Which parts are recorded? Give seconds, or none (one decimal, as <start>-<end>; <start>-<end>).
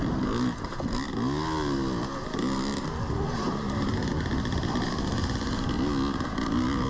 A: 0.0-6.9